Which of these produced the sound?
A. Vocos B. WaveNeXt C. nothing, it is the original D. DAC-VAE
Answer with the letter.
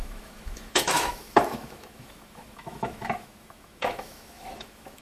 D